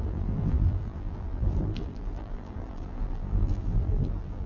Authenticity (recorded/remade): remade